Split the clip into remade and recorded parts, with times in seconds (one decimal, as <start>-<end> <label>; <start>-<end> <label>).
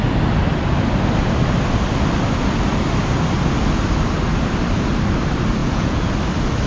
0.0-5.6 recorded; 5.6-6.1 remade; 6.1-6.7 recorded